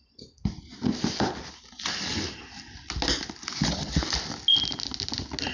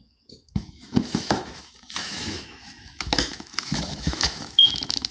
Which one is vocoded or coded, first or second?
second